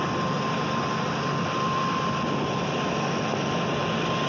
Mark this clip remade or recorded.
recorded